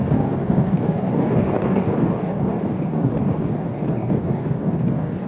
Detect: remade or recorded remade